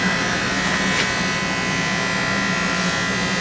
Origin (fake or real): real